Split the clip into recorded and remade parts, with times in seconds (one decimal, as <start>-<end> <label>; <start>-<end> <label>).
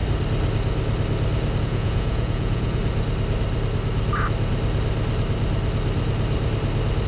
0.0-1.6 recorded; 1.6-2.8 remade; 2.8-7.1 recorded